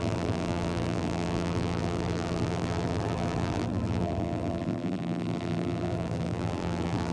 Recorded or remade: remade